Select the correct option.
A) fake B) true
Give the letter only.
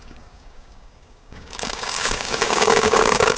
A